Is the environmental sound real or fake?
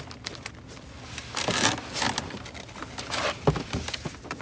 real